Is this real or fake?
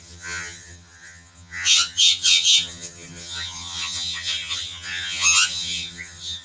fake